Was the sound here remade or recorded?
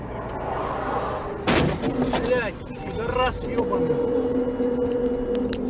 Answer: recorded